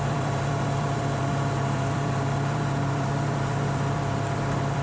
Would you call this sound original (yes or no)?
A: no